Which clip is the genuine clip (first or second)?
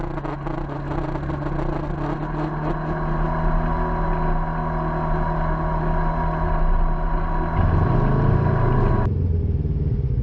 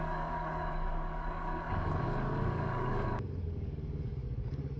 first